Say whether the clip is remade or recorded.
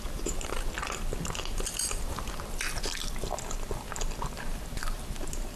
recorded